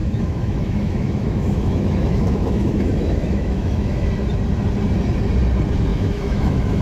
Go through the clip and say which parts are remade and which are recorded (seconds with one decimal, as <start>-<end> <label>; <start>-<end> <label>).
0.0-4.1 remade; 4.1-5.9 recorded; 5.9-6.8 remade